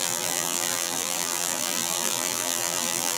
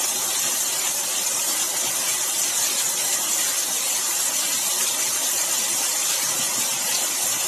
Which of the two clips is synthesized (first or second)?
first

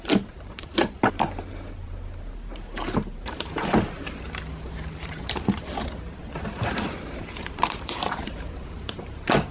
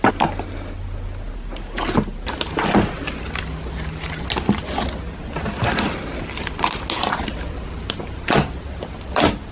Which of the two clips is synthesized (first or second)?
first